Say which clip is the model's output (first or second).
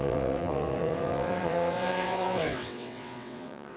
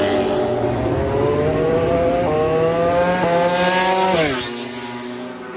first